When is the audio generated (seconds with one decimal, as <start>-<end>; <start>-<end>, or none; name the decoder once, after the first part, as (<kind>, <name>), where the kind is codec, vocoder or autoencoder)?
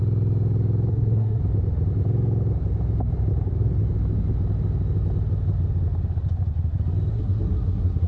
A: 0.9-1.4 (codec, SNAC); 7.1-8.1